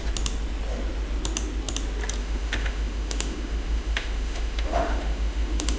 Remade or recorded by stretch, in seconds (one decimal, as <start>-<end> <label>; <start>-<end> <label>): 0.0-2.2 recorded; 2.2-5.8 remade